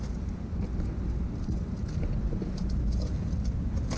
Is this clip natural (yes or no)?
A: yes